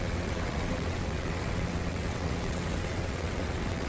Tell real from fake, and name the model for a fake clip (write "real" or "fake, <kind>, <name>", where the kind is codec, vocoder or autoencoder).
fake, vocoder, WaveNeXt